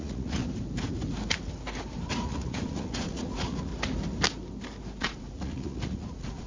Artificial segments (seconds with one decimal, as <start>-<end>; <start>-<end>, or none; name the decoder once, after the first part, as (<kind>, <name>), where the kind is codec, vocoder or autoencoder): 0.0-0.4 (vocoder, Vocos); 2.1-3.7; 5.0-6.5